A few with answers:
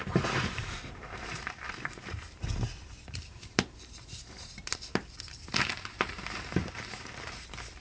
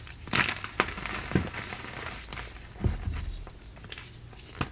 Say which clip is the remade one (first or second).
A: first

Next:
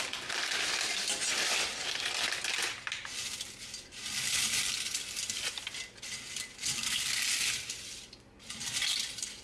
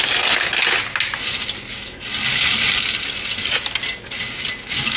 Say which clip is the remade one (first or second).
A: first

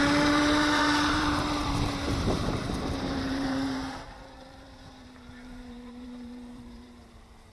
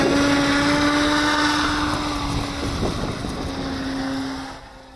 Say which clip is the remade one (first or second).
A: first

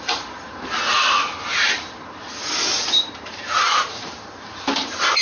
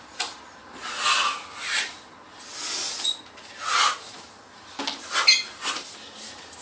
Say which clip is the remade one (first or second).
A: first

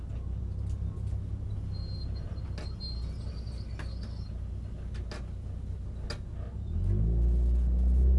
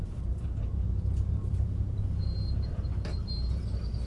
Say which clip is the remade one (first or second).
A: second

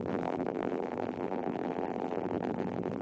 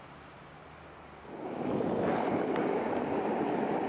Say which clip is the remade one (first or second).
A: first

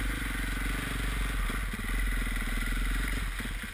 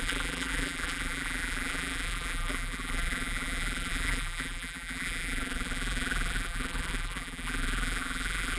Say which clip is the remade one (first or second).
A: second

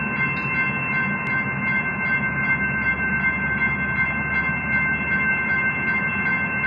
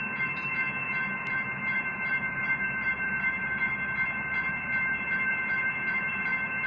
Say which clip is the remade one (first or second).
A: second